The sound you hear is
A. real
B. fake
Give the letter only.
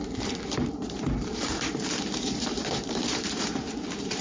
B